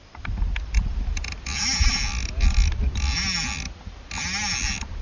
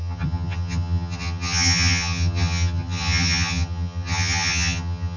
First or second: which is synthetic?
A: second